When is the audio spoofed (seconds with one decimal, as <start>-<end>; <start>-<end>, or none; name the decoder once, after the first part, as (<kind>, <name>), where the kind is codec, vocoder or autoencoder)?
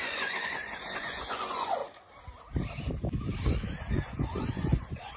0.0-1.8 (vocoder, Vocos); 3.9-5.2